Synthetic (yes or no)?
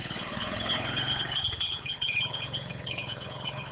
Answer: yes